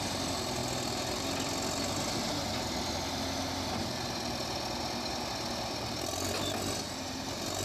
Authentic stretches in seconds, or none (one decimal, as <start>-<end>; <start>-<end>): 0.0-7.6